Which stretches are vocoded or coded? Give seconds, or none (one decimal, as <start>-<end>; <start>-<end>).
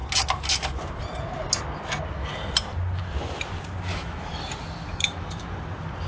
3.9-4.4; 4.9-5.4